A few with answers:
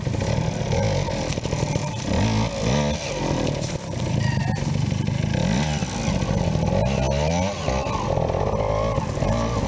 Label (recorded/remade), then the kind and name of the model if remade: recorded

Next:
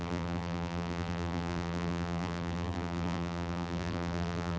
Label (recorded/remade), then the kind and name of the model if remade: remade, vocoder, BigVGAN v2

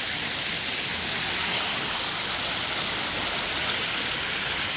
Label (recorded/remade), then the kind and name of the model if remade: recorded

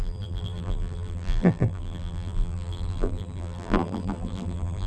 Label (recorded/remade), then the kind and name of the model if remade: remade, vocoder, BigVGAN v2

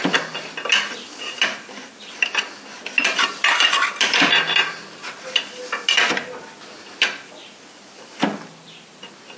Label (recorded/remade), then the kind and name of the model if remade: recorded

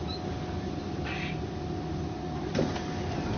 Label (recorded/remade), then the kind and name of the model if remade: recorded